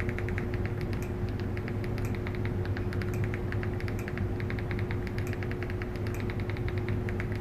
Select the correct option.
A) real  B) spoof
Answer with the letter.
A